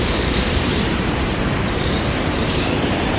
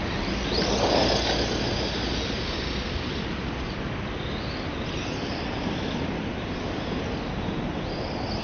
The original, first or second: second